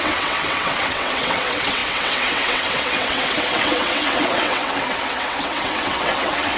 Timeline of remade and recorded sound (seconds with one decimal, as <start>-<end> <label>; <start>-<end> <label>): 0.0-6.6 remade